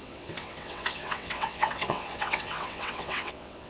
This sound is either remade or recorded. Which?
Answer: remade